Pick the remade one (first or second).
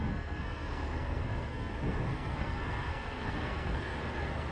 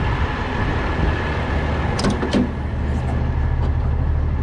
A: first